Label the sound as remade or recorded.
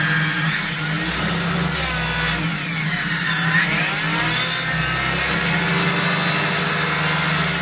recorded